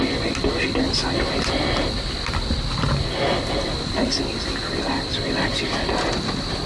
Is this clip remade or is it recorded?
recorded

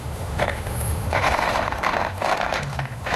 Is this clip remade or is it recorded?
remade